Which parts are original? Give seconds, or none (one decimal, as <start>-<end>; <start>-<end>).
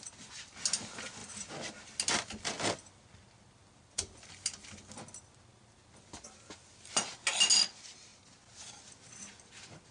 0.0-9.9